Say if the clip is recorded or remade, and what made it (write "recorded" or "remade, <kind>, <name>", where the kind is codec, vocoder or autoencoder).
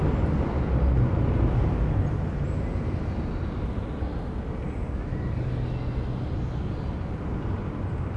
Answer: recorded